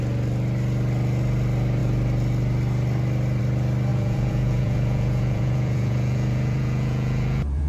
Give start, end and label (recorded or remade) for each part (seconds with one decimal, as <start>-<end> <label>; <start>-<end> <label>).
0.0-3.9 recorded; 3.9-7.7 remade